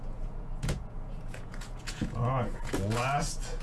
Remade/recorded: remade